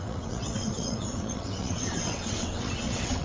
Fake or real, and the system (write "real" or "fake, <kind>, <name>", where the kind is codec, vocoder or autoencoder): fake, vocoder, WaveNeXt